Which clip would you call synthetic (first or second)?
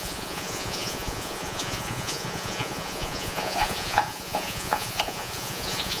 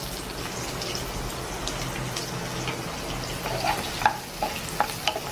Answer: first